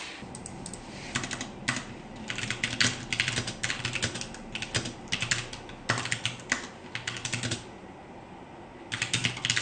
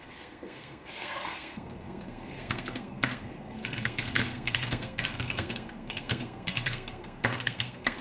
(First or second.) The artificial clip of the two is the second